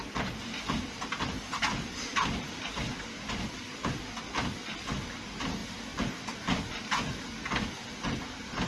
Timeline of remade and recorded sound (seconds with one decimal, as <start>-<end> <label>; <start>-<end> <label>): 0.0-2.1 recorded; 2.1-4.0 remade; 4.0-8.7 recorded